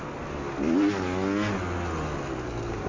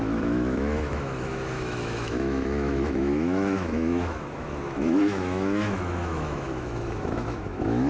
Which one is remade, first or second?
second